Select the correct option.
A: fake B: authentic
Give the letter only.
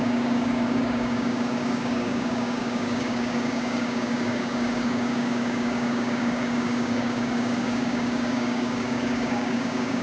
A